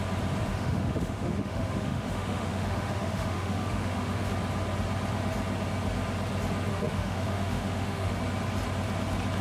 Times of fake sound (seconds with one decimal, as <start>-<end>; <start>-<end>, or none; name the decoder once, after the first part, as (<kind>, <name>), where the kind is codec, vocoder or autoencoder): 0.5-4.3 (autoencoder, DAC-VAE); 6.7-8.2